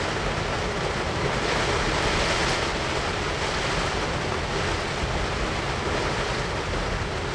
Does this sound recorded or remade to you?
recorded